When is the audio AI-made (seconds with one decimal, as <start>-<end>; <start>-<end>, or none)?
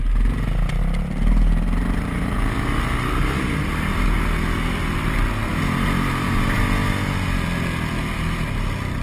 6.1-6.6